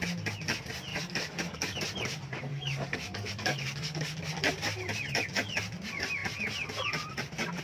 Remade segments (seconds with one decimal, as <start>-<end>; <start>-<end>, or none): 0.9-1.8; 2.5-4.3